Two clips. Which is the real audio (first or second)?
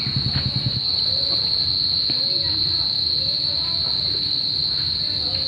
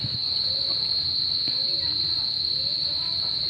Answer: first